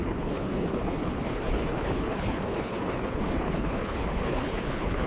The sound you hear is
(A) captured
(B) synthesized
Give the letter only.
B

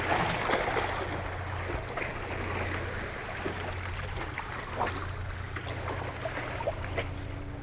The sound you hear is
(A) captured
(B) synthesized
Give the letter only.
A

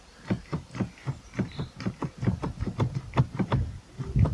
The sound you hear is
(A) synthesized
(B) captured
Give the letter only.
B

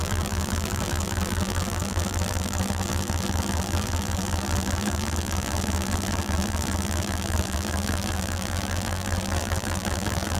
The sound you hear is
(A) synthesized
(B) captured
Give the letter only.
A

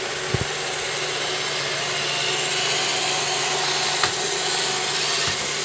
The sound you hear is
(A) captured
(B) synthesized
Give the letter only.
A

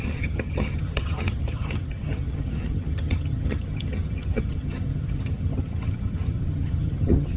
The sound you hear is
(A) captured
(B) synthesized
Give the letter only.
B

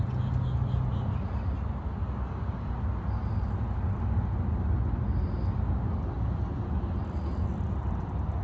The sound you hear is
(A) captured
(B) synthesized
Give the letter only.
A